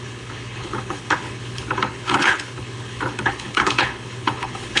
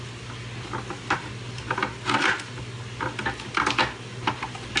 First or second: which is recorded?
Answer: second